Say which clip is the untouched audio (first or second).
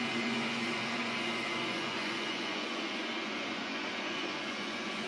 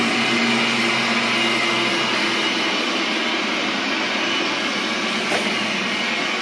second